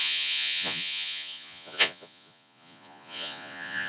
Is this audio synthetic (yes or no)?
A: yes